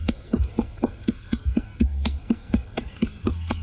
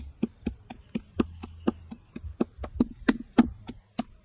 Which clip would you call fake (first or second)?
first